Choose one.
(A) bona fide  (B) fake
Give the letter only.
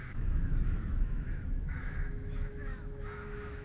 B